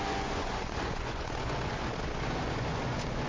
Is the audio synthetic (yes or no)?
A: yes